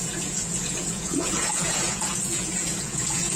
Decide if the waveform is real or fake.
fake